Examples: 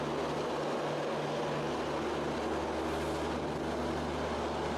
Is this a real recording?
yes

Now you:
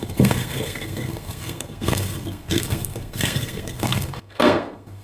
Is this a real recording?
no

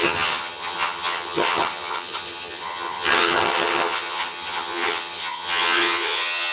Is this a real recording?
no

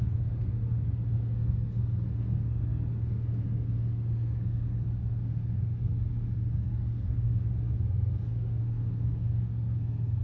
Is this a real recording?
no